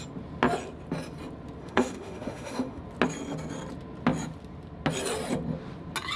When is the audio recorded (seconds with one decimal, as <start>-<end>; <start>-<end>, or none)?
0.0-1.6; 2.8-6.2